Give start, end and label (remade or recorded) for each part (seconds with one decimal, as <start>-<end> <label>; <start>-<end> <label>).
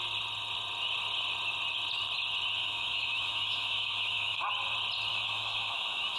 0.0-2.6 recorded; 2.6-4.4 remade; 4.4-5.1 recorded; 5.1-6.2 remade